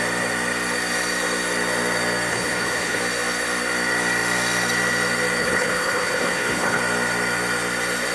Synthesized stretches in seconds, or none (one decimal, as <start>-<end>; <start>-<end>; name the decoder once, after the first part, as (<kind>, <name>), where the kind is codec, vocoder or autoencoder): 2.3-3.0 (codec, HILCodec); 5.4-6.8